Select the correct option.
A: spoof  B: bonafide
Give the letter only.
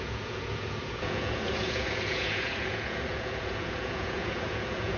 A